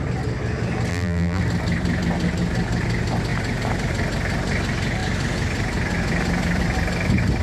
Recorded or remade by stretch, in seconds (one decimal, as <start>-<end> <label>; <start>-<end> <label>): 0.0-0.9 recorded; 0.9-1.4 remade; 1.4-7.4 recorded